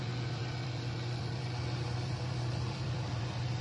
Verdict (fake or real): fake